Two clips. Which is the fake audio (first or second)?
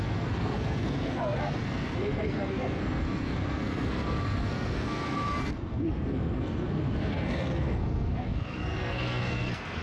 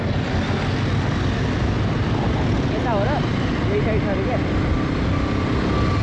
first